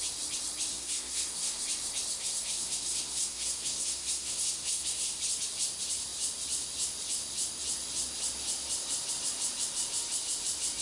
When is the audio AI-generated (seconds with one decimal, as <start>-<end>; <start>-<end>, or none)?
0.7-1.6; 2.1-5.2